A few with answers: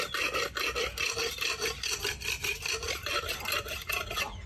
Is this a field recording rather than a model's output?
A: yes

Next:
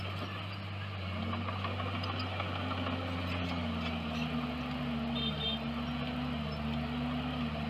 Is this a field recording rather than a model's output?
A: yes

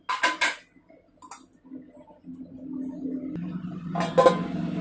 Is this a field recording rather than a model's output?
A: yes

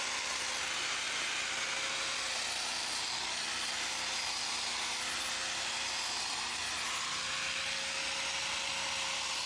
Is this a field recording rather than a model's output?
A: yes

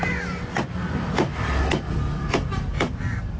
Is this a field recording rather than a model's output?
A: yes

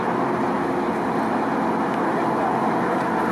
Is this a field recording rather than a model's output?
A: yes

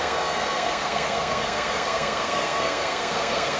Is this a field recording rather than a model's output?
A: no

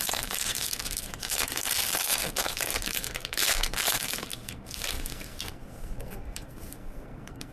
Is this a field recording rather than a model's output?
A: no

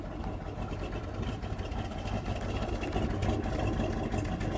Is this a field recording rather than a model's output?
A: yes